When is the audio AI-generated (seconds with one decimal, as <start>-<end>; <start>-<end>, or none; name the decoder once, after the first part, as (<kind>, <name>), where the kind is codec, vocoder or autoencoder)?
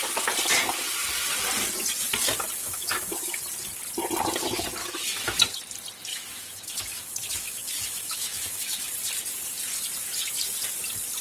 2.6-3.4 (autoencoder, DAC-VAE); 4.8-5.4; 6.1-8.9